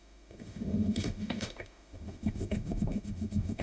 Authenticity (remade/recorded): remade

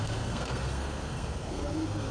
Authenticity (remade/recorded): remade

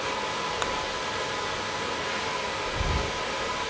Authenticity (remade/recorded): recorded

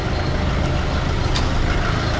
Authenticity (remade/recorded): recorded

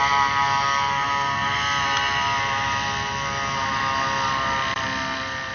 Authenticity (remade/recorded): recorded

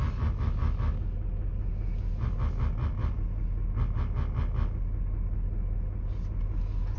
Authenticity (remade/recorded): recorded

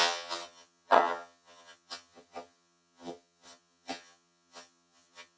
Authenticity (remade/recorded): remade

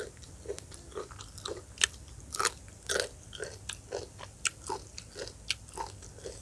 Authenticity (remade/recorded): recorded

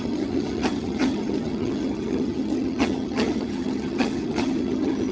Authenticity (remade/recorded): remade